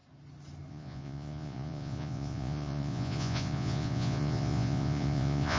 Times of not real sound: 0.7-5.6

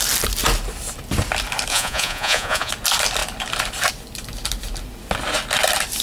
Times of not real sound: 1.7-2.7

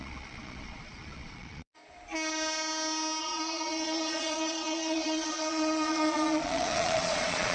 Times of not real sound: 0.0-1.8; 3.2-7.5

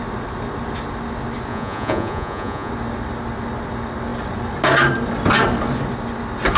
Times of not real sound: 1.5-2.7

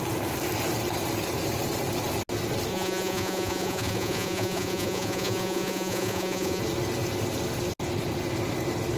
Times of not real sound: 2.7-6.6